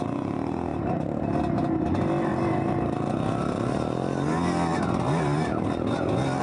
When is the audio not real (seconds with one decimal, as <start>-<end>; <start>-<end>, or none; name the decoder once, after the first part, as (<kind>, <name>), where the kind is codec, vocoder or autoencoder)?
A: 0.7-1.2 (vocoder, BigVGAN v2)